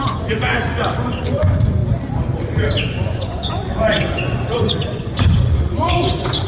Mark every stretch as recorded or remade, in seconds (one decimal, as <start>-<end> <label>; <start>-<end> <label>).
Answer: 0.0-0.7 remade; 0.7-1.2 recorded; 1.2-1.8 remade; 1.8-2.8 recorded; 2.8-6.5 remade